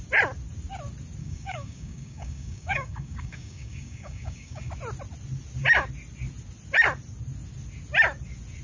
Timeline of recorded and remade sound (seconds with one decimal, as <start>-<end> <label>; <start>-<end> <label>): 0.0-1.2 recorded; 1.2-4.7 remade; 4.7-8.6 recorded